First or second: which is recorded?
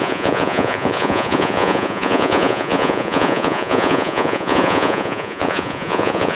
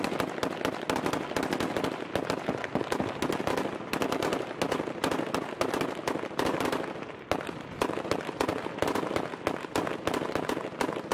second